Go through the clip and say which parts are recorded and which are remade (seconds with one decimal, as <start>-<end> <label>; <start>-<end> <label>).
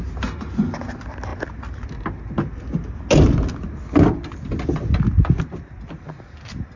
0.0-6.8 recorded